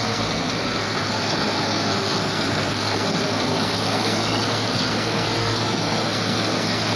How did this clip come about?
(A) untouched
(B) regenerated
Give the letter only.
B